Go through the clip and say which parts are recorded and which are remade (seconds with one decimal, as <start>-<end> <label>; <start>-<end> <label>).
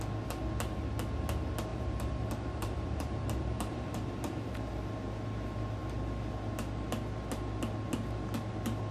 0.0-1.7 recorded; 1.7-4.7 remade; 4.7-8.9 recorded